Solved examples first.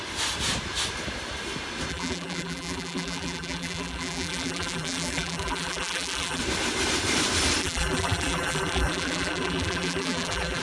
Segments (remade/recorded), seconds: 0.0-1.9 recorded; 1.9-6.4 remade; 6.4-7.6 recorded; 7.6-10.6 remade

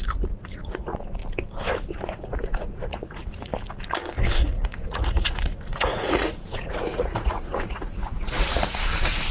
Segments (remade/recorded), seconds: 0.0-1.2 remade; 1.2-2.0 recorded; 2.0-3.5 remade; 3.5-4.4 recorded; 4.4-9.3 remade

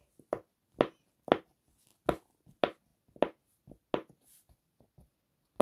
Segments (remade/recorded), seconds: 0.0-5.6 recorded

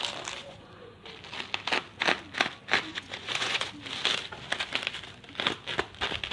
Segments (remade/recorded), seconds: 0.0-0.4 recorded; 0.4-1.1 remade; 1.1-2.9 recorded; 2.9-3.7 remade; 3.7-6.3 recorded

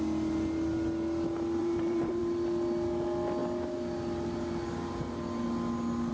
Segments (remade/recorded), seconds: 0.0-1.6 recorded; 1.6-2.2 remade; 2.2-6.1 recorded

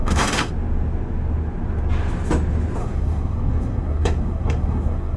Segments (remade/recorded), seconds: 0.0-0.5 remade; 0.5-2.8 recorded; 2.8-5.2 remade

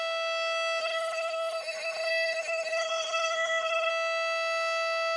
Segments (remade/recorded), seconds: 0.0-0.8 recorded; 0.8-3.9 remade; 3.9-5.2 recorded

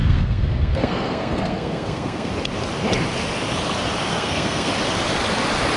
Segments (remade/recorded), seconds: 0.0-2.3 remade; 2.3-4.1 recorded; 4.1-4.7 remade; 4.7-5.8 recorded